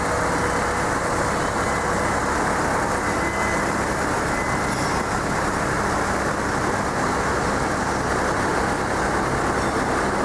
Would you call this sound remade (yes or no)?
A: no